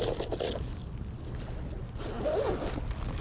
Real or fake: real